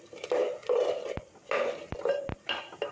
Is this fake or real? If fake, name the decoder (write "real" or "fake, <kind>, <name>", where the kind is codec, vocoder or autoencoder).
real